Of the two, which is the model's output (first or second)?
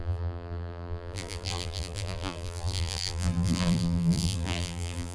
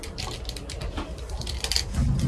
first